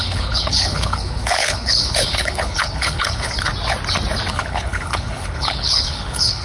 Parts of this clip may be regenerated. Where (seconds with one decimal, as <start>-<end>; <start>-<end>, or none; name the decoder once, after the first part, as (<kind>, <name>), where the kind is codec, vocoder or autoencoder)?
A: 0.0-3.5 (codec, HILCodec); 4.3-6.4